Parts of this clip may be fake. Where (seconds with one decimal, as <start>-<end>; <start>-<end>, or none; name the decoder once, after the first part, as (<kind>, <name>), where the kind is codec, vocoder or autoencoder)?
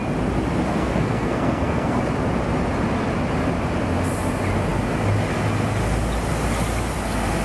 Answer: 0.7-2.0 (codec, SNAC)